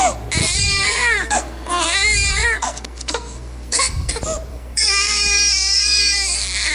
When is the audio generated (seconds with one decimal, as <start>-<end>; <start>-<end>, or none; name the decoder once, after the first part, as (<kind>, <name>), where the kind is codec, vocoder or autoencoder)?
0.4-4.1 (codec, SNAC); 4.5-6.7